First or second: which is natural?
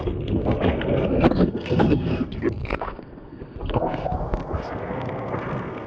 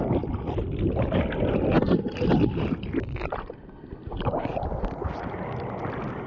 second